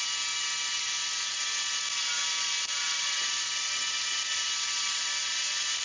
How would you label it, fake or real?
real